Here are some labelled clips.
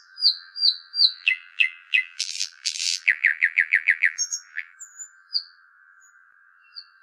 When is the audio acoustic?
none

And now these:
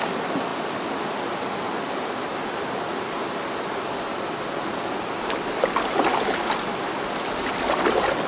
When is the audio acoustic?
0.0-8.3

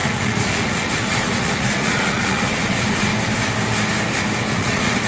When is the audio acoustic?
3.1-4.5

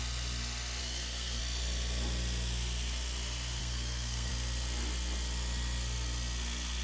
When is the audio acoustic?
0.0-0.8; 1.4-3.6; 4.3-6.8

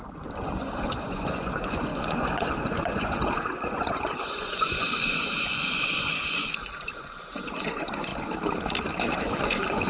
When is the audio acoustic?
8.1-9.2